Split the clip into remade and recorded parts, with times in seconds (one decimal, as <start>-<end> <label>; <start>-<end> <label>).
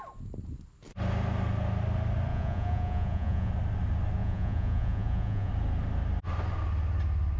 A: 0.0-2.3 recorded; 2.3-3.5 remade; 3.5-4.2 recorded; 4.2-5.5 remade; 5.5-7.4 recorded